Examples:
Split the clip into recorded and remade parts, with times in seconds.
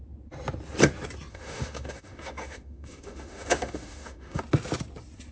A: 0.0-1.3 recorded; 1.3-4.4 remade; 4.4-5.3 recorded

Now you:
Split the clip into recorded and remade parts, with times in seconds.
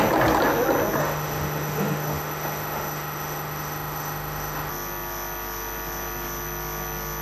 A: 0.0-1.0 recorded; 1.0-4.7 remade; 4.7-7.2 recorded